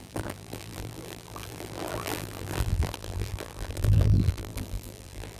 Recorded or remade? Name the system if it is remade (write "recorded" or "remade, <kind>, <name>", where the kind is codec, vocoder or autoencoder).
remade, vocoder, BigVGAN v2